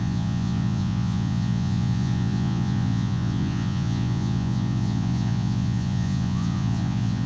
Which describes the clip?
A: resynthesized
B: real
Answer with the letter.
A